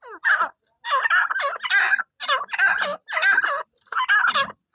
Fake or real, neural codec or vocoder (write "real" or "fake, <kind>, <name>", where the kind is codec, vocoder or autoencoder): real